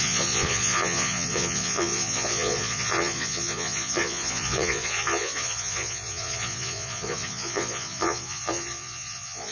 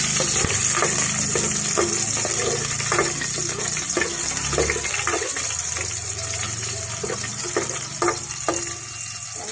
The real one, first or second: second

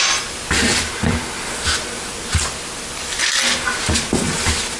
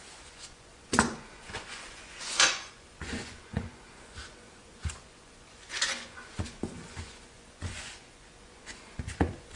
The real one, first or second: first